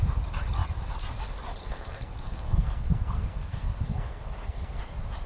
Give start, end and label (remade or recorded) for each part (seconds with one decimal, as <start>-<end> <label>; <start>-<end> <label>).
0.0-1.6 recorded; 1.6-4.8 remade; 4.8-5.3 recorded